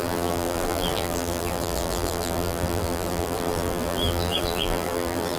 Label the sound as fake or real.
fake